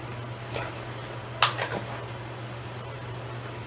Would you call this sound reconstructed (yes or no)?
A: no